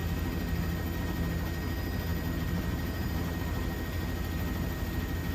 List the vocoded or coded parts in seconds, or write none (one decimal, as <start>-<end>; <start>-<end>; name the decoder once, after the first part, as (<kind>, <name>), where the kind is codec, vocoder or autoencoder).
2.1-3.4 (vocoder, BigVGAN v2)